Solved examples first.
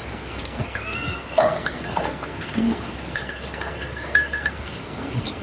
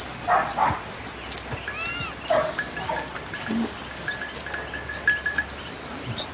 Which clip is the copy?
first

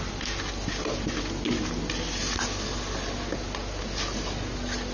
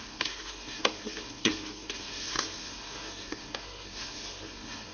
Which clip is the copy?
second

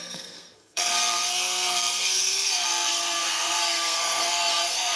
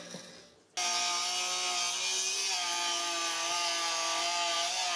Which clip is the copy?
first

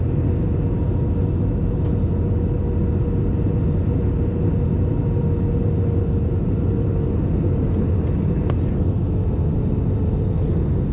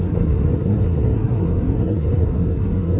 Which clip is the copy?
second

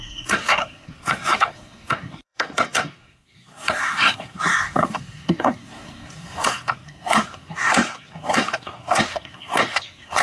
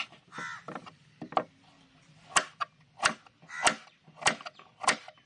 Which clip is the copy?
first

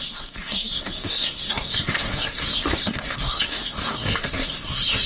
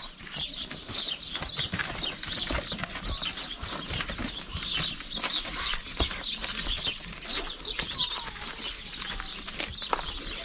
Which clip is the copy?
first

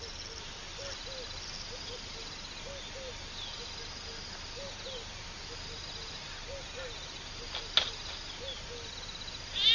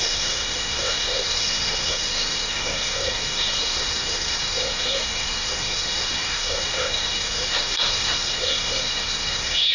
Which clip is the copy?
second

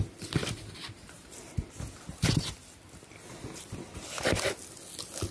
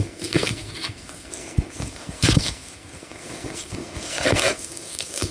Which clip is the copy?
second